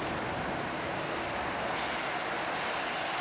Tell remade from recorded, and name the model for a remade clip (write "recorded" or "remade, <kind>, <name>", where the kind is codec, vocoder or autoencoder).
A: recorded